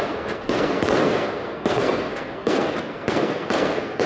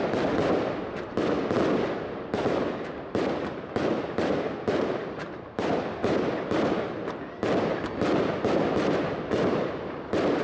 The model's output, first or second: first